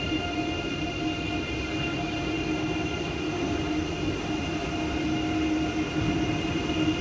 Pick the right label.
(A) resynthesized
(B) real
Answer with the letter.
B